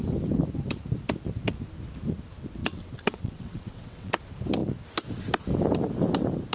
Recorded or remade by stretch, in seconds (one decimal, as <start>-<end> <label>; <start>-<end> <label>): 0.0-2.6 recorded; 2.6-4.1 remade; 4.1-6.5 recorded